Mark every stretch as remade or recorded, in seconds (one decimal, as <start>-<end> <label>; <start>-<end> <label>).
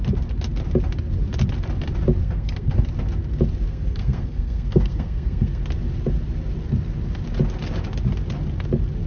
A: 0.0-2.2 recorded; 2.2-2.8 remade; 2.8-3.7 recorded; 3.7-5.6 remade; 5.6-9.1 recorded